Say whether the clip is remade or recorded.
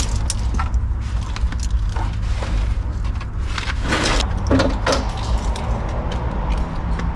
recorded